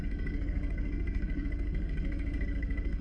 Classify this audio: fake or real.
fake